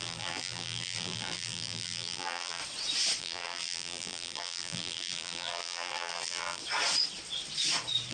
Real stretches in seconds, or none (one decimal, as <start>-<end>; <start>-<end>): 2.6-3.2; 6.6-8.1